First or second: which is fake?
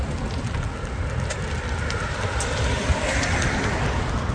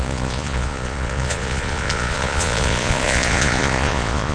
second